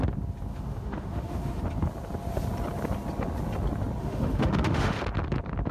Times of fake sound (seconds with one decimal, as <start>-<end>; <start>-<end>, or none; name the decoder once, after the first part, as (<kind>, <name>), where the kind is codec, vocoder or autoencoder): 0.5-1.6 (autoencoder, DAC-VAE); 4.0-5.0

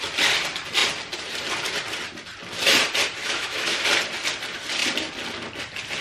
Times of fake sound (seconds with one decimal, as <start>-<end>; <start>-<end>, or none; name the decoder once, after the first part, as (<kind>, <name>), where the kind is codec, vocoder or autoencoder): 3.2-3.8 (autoencoder, DAC-VAE)